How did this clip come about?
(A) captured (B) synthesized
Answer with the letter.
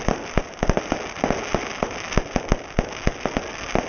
A